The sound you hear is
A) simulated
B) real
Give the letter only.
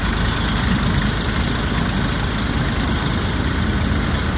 B